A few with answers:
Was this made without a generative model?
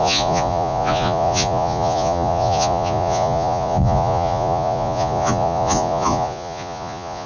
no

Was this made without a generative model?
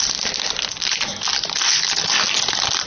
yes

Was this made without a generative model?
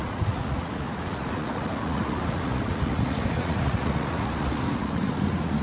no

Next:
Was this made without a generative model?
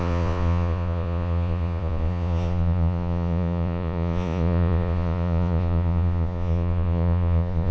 no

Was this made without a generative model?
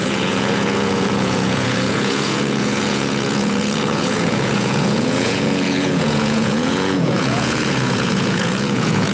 no